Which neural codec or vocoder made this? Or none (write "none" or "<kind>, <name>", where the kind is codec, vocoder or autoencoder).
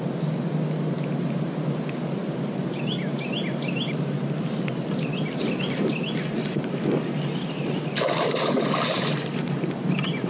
none